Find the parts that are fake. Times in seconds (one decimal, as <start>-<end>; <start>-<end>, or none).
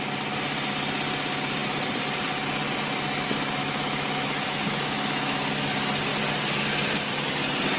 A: 3.6-5.5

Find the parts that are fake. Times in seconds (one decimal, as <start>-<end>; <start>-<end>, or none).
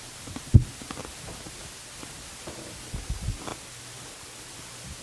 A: none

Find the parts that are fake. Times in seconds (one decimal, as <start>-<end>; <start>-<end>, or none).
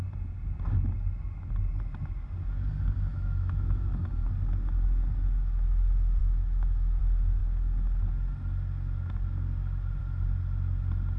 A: 3.1-3.9; 6.2-7.0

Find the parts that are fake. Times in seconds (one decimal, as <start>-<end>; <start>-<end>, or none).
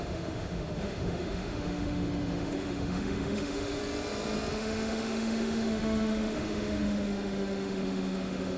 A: 0.0-3.8; 4.5-8.6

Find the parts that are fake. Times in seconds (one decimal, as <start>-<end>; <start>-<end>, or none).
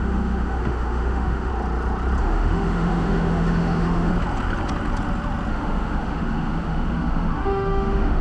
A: 0.0-1.5; 2.2-4.1; 5.5-8.2